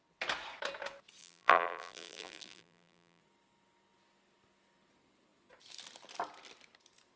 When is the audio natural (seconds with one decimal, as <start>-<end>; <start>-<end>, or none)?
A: 0.0-1.2; 3.2-7.2